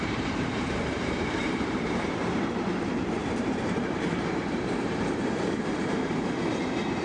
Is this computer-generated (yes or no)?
yes